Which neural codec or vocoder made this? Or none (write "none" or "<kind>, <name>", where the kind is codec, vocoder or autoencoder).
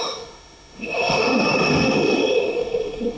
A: autoencoder, DAC-VAE